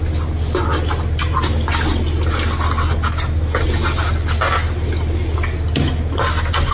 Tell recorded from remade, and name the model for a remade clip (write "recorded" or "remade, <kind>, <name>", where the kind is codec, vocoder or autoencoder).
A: recorded